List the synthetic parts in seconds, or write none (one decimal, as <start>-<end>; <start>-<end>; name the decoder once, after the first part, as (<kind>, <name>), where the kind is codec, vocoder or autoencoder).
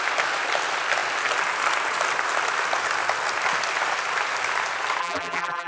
5.0-5.7 (vocoder, BigVGAN v2)